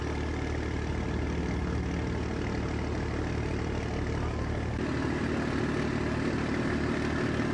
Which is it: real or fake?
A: real